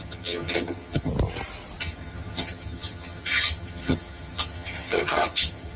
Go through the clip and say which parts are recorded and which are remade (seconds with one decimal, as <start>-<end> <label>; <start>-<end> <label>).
0.0-1.1 remade; 1.1-1.8 recorded; 1.8-5.8 remade